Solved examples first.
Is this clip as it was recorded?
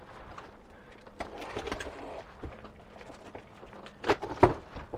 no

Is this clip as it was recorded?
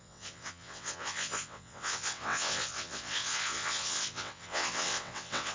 no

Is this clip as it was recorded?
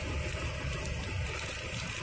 yes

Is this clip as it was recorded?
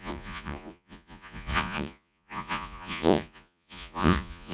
no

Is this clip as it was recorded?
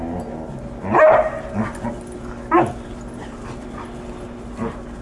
yes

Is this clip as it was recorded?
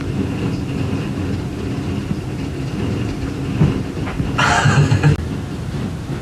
yes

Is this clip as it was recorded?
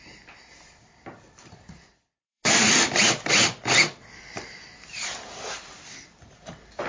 no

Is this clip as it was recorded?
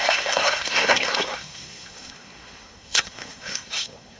no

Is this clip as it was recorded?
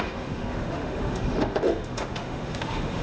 no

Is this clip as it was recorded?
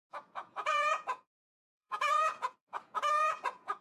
no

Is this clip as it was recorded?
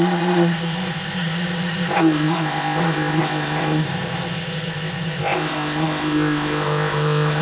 no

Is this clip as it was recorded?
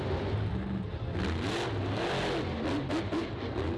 yes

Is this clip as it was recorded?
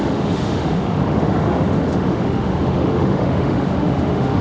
no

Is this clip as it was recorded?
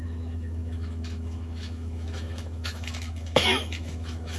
no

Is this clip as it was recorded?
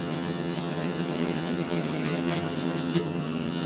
no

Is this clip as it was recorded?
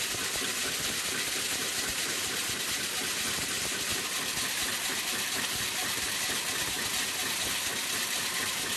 yes